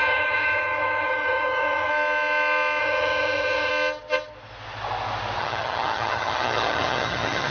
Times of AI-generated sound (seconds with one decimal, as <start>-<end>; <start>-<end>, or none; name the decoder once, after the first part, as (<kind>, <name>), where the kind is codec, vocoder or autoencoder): 0.0-1.9 (vocoder, HiFi-GAN); 2.8-3.7; 5.4-7.5